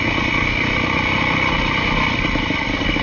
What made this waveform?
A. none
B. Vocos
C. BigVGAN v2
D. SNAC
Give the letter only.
A